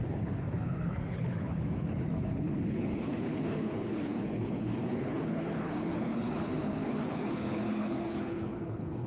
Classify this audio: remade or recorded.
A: remade